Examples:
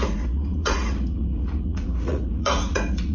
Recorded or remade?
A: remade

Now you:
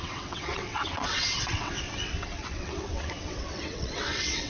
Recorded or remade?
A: remade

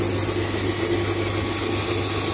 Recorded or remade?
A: recorded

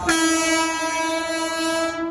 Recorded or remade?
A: recorded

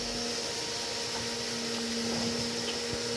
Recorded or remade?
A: recorded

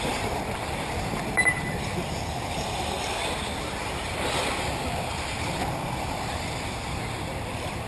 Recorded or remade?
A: remade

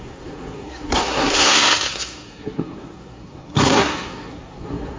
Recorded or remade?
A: remade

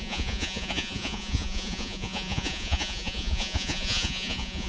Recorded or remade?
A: remade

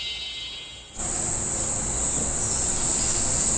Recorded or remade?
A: recorded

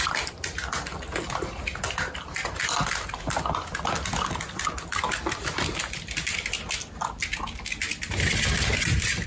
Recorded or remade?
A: recorded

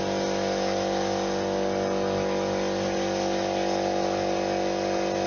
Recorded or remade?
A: recorded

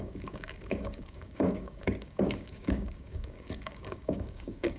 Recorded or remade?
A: remade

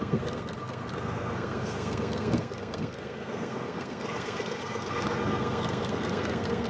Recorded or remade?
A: remade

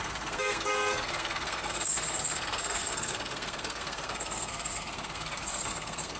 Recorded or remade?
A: remade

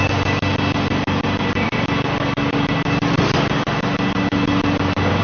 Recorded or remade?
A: recorded